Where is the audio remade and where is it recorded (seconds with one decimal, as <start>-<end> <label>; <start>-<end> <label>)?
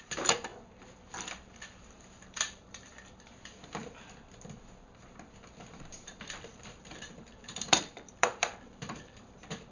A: 0.0-0.5 remade; 0.5-1.1 recorded; 1.1-2.9 remade; 2.9-5.7 recorded; 5.7-9.7 remade